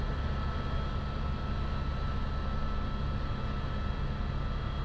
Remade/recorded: recorded